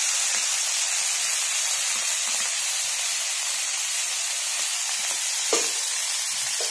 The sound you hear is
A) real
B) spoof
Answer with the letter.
A